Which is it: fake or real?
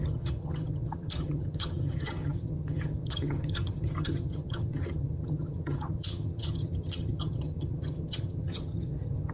fake